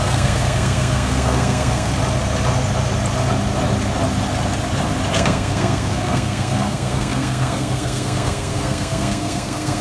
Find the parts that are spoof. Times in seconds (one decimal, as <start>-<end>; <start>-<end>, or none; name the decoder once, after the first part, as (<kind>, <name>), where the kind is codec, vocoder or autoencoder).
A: 0.0-1.9 (codec, SNAC); 5.1-9.8